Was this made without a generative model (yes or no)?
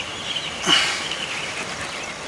yes